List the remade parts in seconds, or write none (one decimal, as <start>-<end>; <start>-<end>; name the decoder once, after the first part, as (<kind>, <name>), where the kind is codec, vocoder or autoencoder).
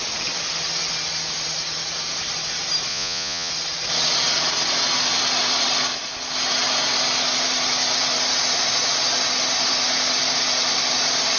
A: 2.9-3.5 (vocoder, Vocos)